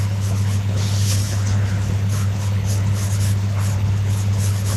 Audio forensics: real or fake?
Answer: fake